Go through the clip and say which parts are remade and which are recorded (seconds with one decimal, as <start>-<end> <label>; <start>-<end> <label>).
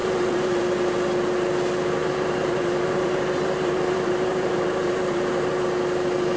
0.0-0.6 remade; 0.6-2.0 recorded; 2.0-5.6 remade; 5.6-6.4 recorded